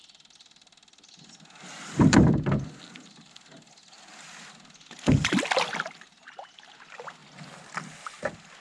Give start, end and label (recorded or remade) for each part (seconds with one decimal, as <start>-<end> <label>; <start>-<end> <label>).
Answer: 0.0-8.6 recorded